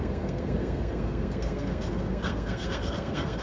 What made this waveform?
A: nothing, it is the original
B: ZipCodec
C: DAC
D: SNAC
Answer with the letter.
D